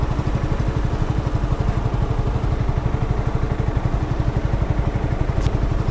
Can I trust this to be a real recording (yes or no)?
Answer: yes